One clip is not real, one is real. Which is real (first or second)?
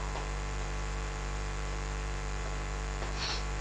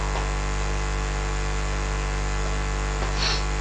second